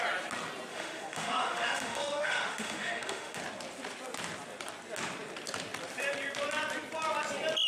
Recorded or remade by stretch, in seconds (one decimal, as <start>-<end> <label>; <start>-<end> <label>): 0.0-0.7 recorded; 0.7-3.4 remade; 3.4-7.7 recorded